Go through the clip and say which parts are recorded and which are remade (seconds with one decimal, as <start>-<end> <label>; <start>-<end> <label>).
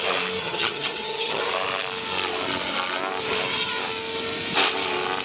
0.0-0.4 recorded; 0.4-1.4 remade; 1.4-5.2 recorded